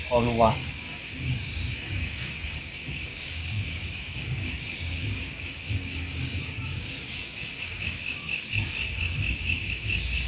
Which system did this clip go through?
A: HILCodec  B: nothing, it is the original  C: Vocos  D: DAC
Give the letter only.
D